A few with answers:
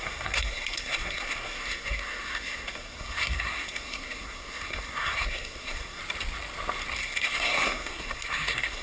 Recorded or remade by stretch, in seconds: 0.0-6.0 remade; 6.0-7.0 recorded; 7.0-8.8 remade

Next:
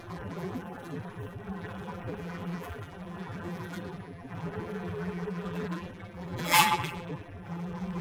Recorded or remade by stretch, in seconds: 0.0-8.0 remade

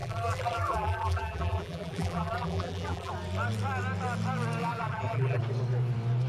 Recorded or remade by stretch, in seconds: 0.0-3.1 remade; 3.1-4.6 recorded; 4.6-5.4 remade; 5.4-6.3 recorded

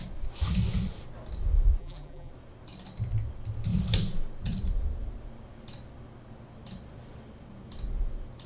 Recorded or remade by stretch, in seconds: 0.0-1.8 recorded; 1.8-2.3 remade; 2.3-8.5 recorded

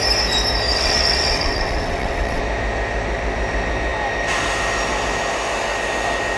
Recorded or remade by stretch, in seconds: 0.0-0.7 recorded; 0.7-2.4 remade; 2.4-6.4 recorded